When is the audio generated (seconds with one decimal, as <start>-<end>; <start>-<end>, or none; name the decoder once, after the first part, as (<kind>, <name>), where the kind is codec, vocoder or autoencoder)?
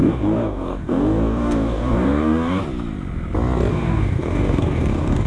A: 0.0-2.6 (codec, DAC); 3.7-5.3